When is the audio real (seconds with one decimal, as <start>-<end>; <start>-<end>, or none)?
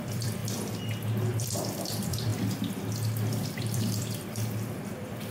0.4-1.3; 2.3-3.6